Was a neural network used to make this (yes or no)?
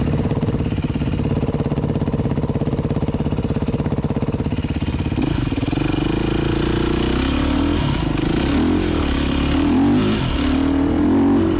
no